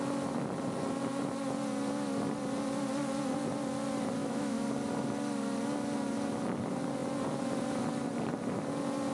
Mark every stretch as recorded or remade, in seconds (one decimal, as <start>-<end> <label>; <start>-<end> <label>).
0.0-4.2 recorded; 4.2-4.7 remade; 4.7-9.1 recorded